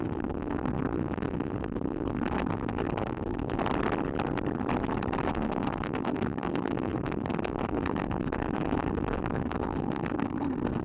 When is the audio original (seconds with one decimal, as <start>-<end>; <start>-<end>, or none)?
3.6-5.3